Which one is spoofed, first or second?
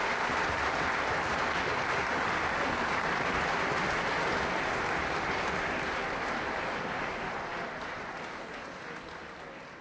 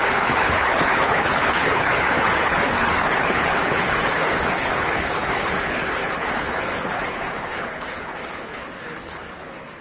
second